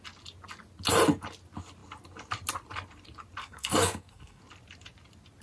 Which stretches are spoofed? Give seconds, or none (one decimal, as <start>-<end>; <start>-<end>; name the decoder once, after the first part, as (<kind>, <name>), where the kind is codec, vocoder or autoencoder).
3.4-4.4 (codec, SNAC)